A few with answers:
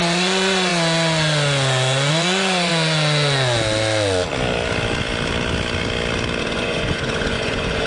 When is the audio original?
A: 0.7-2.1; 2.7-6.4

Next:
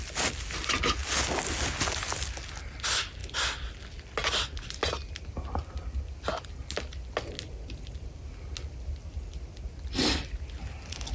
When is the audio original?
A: 0.0-11.1

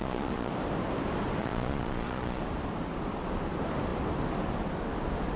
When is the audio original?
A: 0.5-1.4; 2.4-5.4

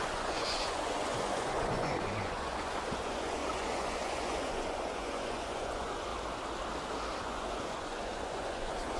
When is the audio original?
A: 6.1-7.2

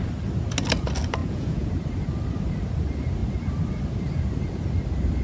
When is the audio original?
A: 0.0-1.2; 1.7-5.2

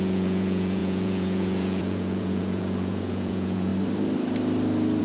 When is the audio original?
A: 3.7-5.0

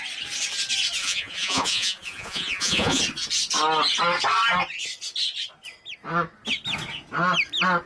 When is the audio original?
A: 0.0-1.0; 3.0-7.9